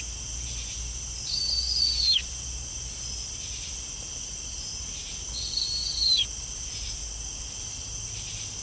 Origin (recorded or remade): recorded